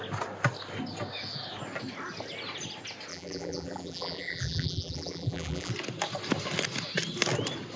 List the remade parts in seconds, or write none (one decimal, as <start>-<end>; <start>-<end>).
3.1-5.7